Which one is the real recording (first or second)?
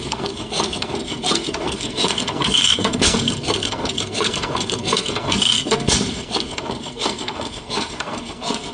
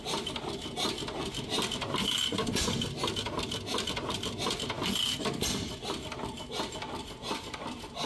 second